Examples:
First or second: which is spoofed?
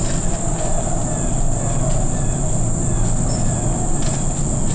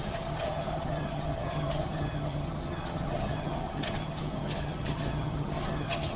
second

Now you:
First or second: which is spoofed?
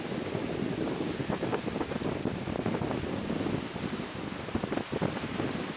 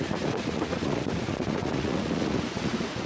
second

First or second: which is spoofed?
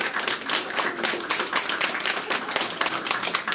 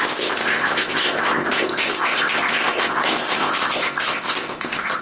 second